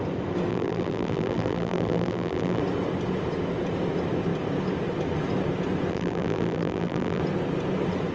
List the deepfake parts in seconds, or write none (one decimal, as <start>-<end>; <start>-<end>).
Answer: 0.5-2.6; 5.9-7.2